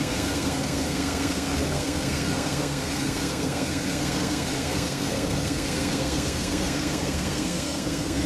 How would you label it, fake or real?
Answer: fake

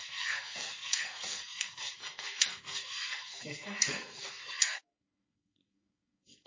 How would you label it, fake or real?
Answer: fake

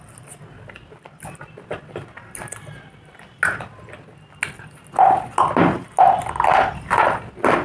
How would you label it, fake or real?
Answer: real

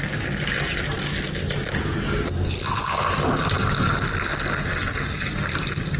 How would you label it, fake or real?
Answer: real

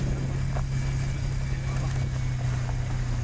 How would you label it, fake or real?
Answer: real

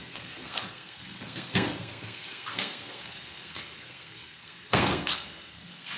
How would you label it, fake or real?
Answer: fake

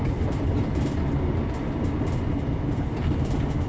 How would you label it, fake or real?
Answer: real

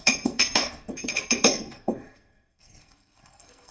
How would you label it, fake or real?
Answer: fake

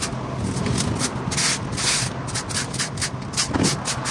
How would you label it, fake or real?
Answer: real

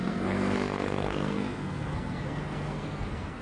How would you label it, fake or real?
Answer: fake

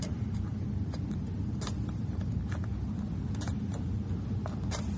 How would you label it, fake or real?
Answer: real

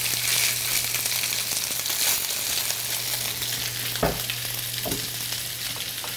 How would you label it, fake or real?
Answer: real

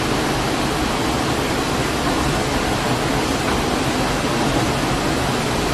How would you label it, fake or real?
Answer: real